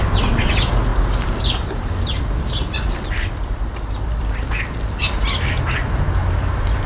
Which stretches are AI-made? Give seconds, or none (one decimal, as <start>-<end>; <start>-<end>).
none